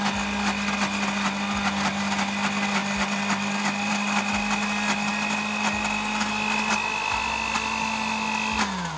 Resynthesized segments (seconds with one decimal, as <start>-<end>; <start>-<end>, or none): 2.8-3.9